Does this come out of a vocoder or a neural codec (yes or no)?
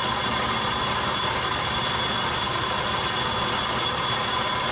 no